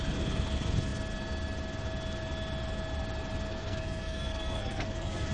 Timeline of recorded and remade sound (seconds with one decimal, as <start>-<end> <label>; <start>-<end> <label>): 0.0-3.5 recorded; 3.5-5.3 remade